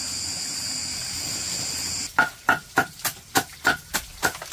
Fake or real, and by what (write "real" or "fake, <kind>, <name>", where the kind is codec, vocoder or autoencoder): real